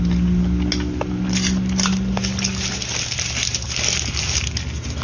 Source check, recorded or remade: recorded